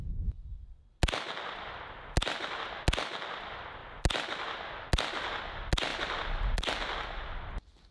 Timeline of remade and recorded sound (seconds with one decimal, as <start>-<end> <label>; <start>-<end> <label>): 0.0-5.9 recorded; 5.9-6.8 remade; 6.8-7.9 recorded